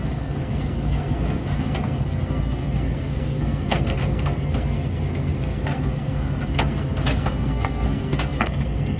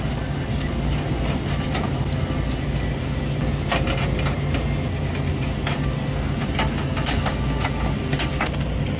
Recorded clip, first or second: second